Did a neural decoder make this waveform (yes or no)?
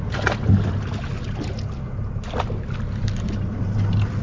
no